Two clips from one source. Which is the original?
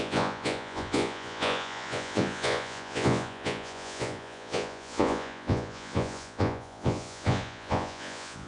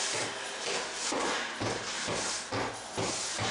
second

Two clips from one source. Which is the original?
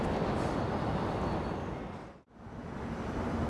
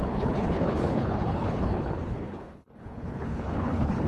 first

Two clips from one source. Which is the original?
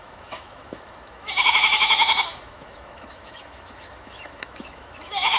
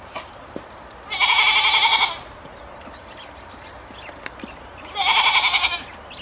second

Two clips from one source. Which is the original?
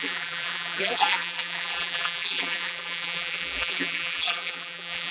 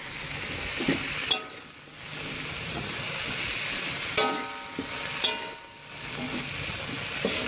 second